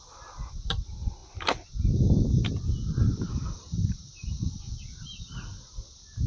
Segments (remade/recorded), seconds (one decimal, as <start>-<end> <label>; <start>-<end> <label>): 0.0-3.6 recorded; 3.6-4.7 remade; 4.7-6.3 recorded